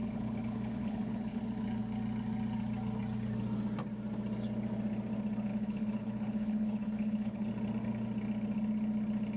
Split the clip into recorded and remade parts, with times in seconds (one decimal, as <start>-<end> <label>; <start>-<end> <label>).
0.0-1.4 remade; 1.4-5.5 recorded; 5.5-7.5 remade; 7.5-9.4 recorded